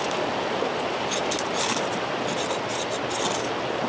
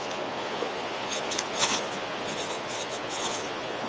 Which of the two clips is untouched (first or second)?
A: first